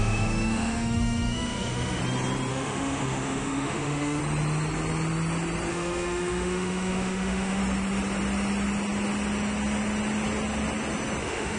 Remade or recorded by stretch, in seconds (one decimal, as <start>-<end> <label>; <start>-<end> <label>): 0.0-2.0 remade; 2.0-2.5 recorded; 2.5-4.2 remade; 4.2-5.7 recorded; 5.7-7.6 remade; 7.6-11.2 recorded; 11.2-11.6 remade